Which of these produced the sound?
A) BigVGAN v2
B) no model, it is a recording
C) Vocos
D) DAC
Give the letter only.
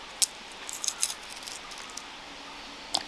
B